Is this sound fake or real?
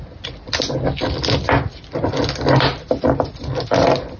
real